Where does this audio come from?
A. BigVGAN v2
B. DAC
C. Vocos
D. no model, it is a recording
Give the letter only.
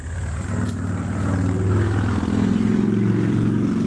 D